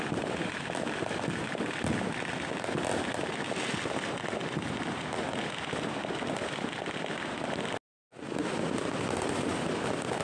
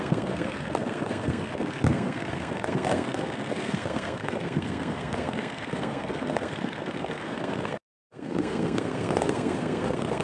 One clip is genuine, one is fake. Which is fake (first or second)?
second